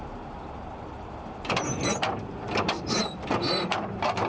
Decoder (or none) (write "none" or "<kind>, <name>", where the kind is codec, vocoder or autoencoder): vocoder, BigVGAN v2